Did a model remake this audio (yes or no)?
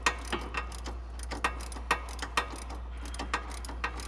no